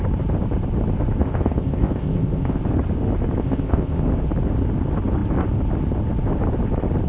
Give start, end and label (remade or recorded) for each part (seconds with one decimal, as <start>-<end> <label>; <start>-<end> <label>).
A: 0.0-1.2 recorded; 1.2-2.6 remade; 2.6-3.4 recorded; 3.4-4.0 remade; 4.0-7.1 recorded